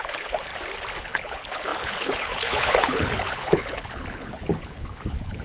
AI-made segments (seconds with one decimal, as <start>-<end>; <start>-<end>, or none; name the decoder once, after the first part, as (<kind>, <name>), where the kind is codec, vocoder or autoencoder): 0.0-0.5 (codec, HILCodec); 1.0-5.4